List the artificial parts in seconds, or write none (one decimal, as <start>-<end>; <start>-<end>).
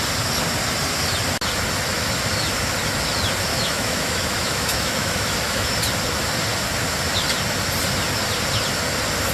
3.5-5.7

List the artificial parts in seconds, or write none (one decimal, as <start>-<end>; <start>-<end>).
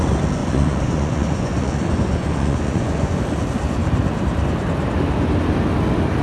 0.4-3.2